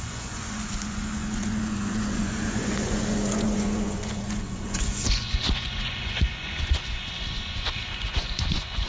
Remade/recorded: remade